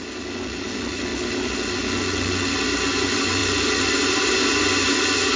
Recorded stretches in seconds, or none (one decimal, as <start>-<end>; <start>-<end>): 0.0-5.4